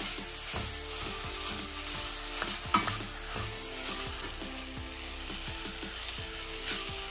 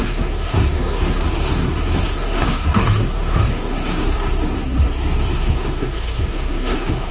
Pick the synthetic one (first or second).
second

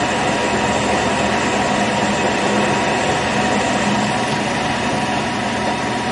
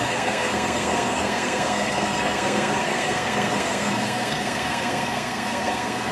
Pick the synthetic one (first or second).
second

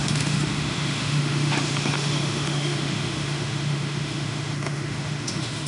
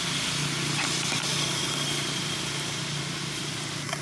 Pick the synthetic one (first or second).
first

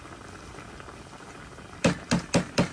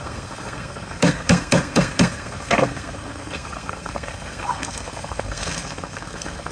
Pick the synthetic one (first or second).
second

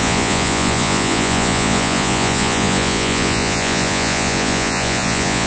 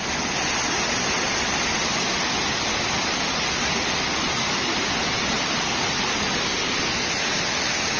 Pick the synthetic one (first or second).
first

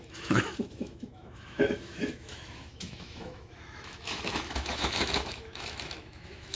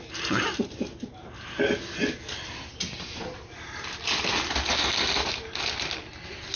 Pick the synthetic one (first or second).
first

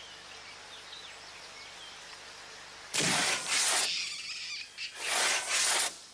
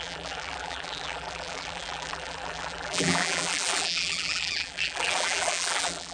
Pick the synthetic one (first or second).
second